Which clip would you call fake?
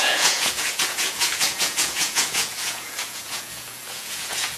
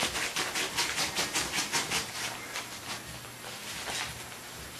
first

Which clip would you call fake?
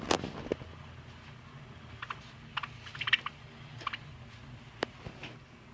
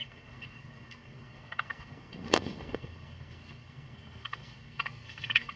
second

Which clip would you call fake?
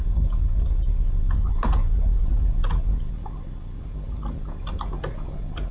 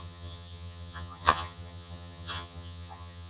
second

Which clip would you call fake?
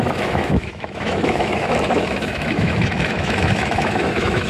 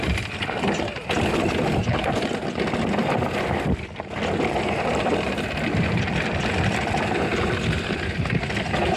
first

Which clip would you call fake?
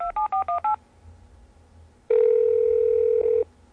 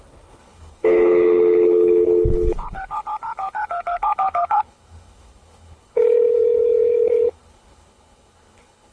second